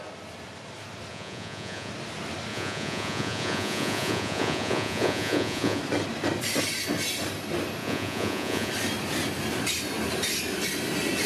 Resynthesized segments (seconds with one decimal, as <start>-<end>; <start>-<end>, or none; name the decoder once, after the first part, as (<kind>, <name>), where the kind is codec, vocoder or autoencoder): 1.1-1.9 (vocoder, Vocos); 2.5-5.8; 7.8-8.7